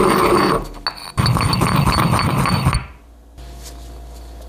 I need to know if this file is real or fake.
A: real